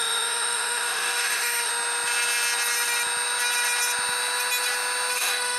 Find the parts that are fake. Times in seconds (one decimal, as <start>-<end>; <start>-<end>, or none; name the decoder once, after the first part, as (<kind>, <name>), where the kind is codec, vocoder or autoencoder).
0.0-1.7 (autoencoder, DAC-VAE); 5.1-5.6